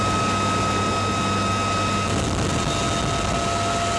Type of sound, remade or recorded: recorded